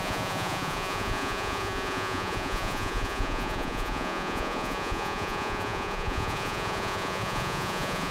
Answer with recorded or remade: remade